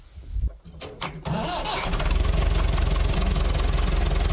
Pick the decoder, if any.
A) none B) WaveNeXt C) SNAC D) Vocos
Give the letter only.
A